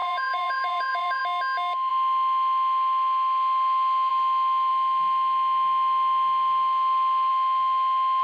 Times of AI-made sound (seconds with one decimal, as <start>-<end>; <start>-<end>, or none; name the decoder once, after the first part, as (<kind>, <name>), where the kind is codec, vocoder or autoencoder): 0.0-1.2 (vocoder, Vocos)